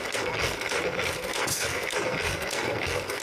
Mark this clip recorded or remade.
remade